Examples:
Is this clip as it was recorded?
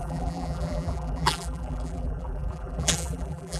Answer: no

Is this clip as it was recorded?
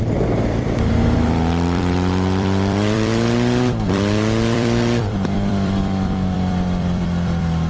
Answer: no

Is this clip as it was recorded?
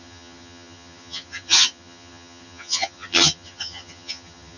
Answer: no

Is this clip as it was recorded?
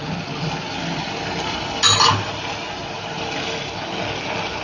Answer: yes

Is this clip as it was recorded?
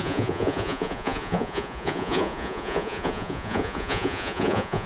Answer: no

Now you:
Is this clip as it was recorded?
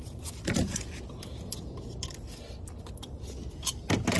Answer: yes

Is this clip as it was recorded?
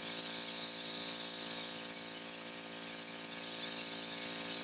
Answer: yes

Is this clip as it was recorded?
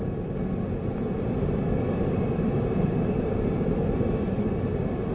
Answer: yes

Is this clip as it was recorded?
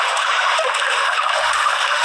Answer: no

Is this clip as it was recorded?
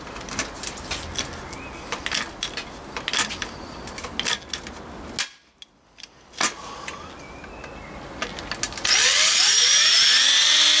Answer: yes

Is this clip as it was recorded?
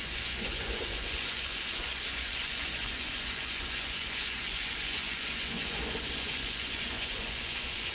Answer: no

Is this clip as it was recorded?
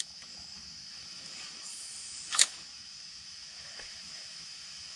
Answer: no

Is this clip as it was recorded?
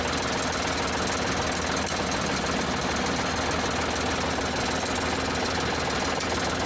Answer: yes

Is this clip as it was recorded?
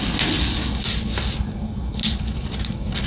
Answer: yes